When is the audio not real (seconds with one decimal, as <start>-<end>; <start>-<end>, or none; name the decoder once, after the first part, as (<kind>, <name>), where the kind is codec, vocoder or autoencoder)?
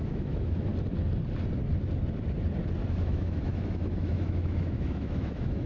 0.0-0.7 (autoencoder, DAC-VAE); 2.9-5.7